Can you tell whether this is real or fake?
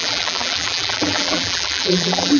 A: fake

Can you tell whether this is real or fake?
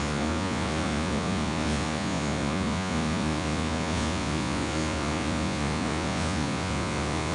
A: fake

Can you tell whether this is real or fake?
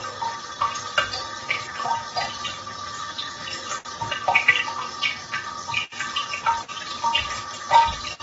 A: real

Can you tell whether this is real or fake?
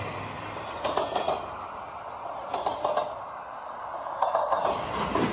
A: real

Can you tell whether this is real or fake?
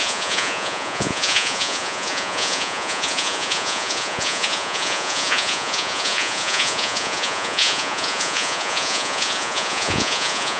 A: fake